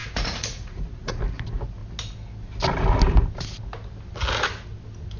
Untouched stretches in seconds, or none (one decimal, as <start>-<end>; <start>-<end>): 1.2-5.2